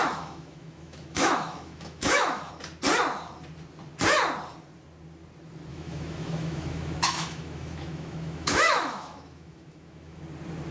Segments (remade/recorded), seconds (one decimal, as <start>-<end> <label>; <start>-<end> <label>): 0.0-2.5 remade; 2.5-5.7 recorded; 5.7-10.2 remade; 10.2-10.7 recorded